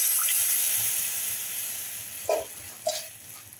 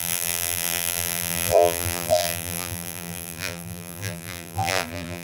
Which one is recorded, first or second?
first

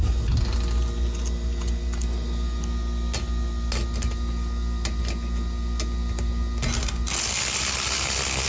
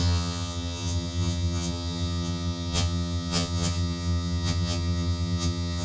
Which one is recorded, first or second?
first